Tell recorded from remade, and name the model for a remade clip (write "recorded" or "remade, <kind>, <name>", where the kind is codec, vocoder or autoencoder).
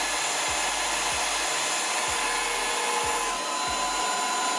recorded